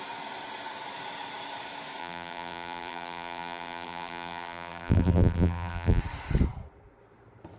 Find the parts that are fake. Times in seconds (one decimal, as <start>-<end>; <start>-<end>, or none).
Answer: 2.0-6.0